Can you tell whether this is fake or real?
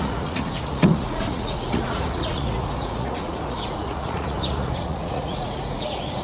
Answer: fake